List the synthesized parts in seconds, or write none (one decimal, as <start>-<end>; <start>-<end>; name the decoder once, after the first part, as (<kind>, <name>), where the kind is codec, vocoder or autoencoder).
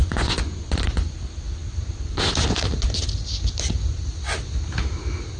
0.0-0.7 (vocoder, Vocos)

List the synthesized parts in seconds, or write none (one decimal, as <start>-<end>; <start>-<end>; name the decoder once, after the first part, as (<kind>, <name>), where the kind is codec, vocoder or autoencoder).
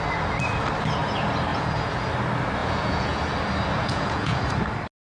1.5-2.1 (vocoder, Vocos); 2.6-3.2; 3.8-4.4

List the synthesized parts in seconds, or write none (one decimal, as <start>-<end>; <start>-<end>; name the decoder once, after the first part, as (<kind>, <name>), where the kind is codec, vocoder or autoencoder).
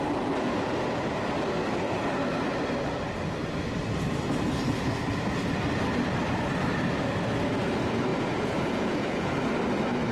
8.1-9.3 (vocoder, Vocos)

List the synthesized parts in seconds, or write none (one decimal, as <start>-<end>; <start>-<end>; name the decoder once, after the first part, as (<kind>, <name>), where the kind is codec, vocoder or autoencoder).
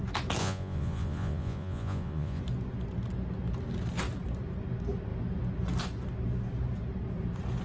0.4-2.4 (vocoder, Vocos)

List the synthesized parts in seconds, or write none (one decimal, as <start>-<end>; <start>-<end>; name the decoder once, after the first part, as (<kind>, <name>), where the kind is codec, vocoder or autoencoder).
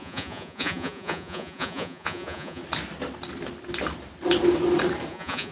0.0-2.6 (vocoder, Vocos); 5.1-5.5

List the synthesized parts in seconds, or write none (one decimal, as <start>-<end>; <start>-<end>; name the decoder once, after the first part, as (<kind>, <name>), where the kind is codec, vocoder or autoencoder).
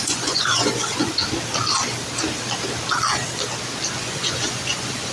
0.0-1.2 (vocoder, Vocos); 4.0-5.1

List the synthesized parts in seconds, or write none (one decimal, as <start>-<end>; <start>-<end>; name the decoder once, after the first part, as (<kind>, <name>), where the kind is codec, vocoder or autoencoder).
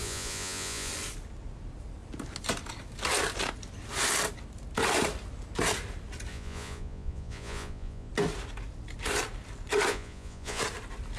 0.0-0.9 (vocoder, Vocos); 6.3-8.1; 9.9-10.6